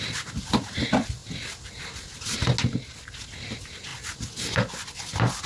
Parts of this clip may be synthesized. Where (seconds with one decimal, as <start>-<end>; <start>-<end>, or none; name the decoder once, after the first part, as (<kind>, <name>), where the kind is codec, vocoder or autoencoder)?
none